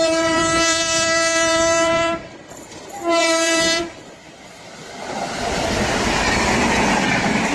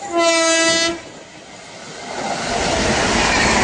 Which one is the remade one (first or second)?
first